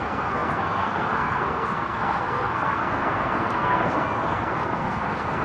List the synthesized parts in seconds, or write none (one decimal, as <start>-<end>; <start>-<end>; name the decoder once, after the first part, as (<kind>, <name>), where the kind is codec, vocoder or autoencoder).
0.0-5.4 (codec, SNAC)